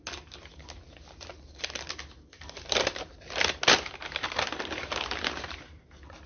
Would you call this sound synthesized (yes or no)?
no